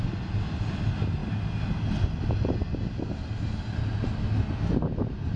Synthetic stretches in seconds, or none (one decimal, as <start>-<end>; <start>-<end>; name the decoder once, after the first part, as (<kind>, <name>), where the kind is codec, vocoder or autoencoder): none

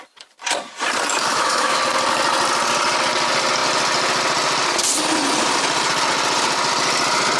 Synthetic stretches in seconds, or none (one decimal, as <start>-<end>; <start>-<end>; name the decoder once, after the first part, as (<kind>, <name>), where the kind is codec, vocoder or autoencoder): 1.3-1.8 (autoencoder, DAC-VAE)

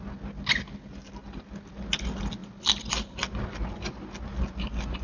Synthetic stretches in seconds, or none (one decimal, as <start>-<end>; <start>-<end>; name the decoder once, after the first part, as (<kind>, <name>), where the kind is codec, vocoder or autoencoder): none

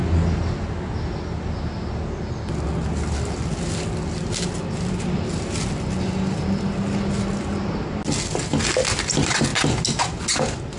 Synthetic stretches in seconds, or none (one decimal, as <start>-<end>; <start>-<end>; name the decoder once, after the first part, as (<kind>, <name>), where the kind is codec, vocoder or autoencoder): none

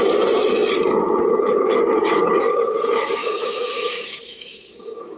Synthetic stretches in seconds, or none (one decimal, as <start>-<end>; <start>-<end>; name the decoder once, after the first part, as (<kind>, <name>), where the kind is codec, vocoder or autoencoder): 3.2-5.2 (autoencoder, DAC-VAE)

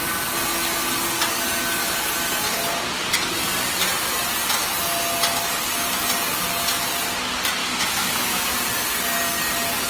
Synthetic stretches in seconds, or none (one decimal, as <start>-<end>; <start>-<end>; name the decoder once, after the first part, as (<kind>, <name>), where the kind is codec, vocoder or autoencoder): 7.6-8.4 (autoencoder, DAC-VAE)